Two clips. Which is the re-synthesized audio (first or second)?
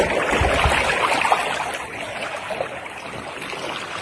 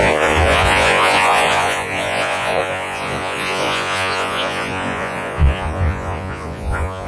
second